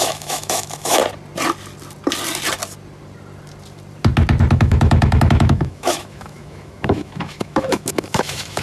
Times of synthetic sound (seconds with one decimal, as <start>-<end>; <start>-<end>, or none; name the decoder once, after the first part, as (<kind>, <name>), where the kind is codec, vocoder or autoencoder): 0.0-1.0 (autoencoder, DAC-VAE); 4.5-8.6